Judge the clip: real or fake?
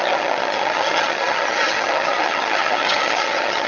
fake